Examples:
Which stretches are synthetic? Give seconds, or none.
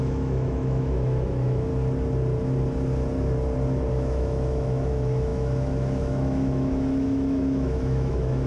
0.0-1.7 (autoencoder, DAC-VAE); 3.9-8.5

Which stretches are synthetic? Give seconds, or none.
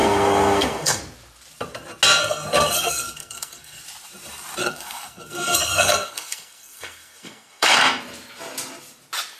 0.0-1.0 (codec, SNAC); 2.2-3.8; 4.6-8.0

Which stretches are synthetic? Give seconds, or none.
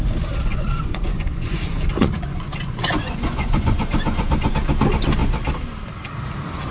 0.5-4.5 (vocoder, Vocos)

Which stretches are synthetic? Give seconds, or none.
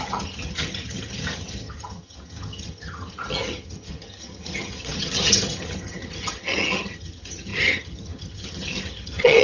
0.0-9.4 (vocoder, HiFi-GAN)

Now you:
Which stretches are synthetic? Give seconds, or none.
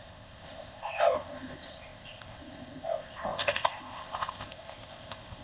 0.0-5.4 (codec, ZipCodec)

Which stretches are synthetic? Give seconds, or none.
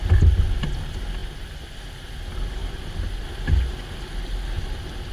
none